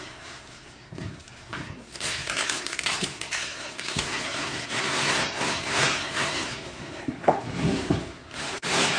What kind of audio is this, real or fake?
fake